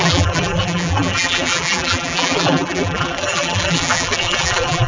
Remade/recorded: remade